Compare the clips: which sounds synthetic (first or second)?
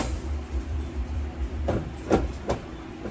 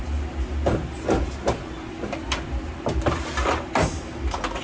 first